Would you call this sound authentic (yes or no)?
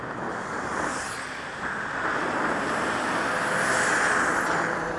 yes